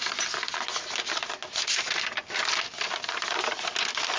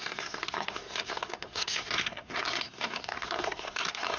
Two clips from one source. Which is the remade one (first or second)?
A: second